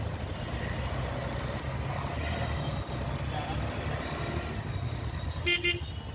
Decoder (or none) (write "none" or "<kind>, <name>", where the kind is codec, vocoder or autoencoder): none